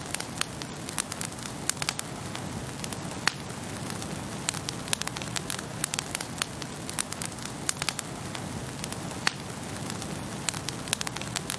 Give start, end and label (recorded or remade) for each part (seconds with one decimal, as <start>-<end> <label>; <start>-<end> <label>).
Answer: 0.0-11.6 recorded